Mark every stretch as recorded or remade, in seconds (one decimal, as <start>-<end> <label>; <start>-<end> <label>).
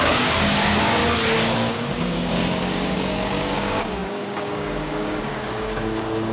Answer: 0.0-1.0 remade; 1.0-1.7 recorded; 1.7-6.3 remade